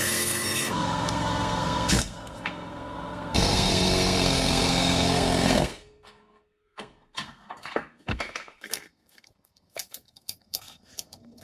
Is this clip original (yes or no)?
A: no